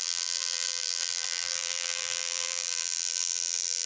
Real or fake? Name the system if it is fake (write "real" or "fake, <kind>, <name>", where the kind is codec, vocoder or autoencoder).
fake, vocoder, BigVGAN v2